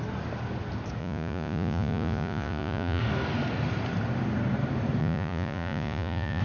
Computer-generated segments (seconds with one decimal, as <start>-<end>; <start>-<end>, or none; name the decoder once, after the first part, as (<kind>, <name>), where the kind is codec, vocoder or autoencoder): 1.0-3.0 (vocoder, Vocos); 5.0-6.4